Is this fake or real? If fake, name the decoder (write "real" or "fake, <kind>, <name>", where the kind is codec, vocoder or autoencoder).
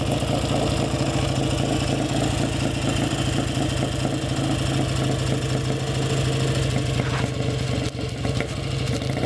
real